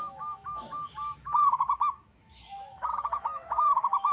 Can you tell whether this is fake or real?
fake